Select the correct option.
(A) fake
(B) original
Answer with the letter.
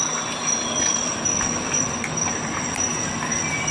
B